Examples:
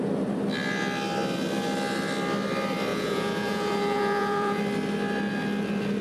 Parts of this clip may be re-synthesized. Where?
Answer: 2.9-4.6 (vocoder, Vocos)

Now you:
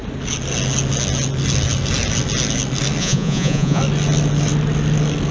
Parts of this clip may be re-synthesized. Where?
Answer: 3.0-3.8 (vocoder, Vocos)

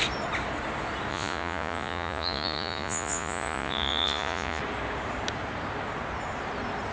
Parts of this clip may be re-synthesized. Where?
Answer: 1.1-4.6 (vocoder, Vocos)

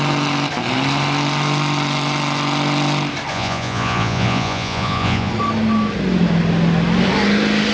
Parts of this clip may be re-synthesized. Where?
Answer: 3.3-5.3 (vocoder, Vocos)

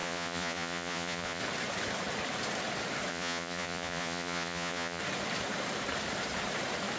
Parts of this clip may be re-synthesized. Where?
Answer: 0.0-1.4 (vocoder, Vocos); 3.1-5.0

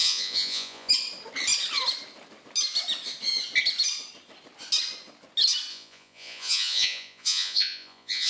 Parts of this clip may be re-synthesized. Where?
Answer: 0.0-0.9 (vocoder, Vocos); 5.7-8.3

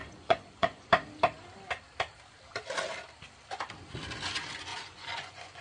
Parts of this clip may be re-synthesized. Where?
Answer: 0.0-0.9 (vocoder, Vocos); 4.7-5.6

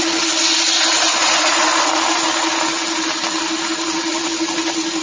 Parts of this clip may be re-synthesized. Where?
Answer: 1.2-1.9 (vocoder, Vocos)